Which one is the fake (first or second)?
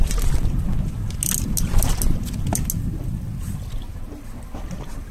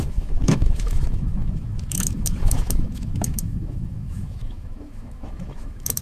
second